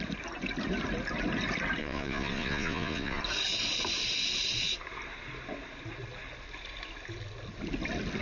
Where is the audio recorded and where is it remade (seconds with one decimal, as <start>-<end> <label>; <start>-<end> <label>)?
0.0-1.8 recorded; 1.8-3.2 remade; 3.2-8.2 recorded